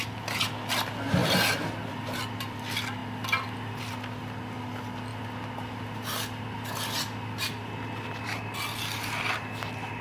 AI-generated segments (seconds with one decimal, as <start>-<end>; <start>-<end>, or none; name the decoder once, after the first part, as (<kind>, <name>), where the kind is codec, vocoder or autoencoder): none